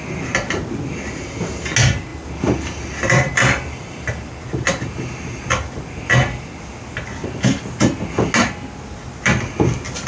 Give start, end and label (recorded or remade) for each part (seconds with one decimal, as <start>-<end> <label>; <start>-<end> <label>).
0.0-2.1 recorded; 2.1-6.1 remade; 6.1-10.1 recorded